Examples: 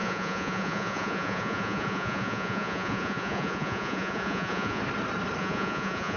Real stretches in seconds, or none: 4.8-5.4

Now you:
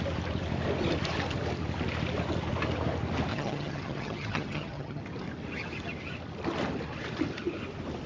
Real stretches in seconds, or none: 0.0-3.3; 5.0-8.1

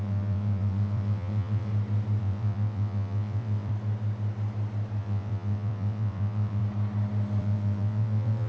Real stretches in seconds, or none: 1.7-2.2; 3.7-5.0; 6.6-7.4

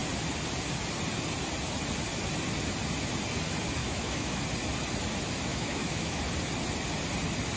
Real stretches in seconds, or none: 0.0-3.8; 4.4-5.5; 6.2-7.6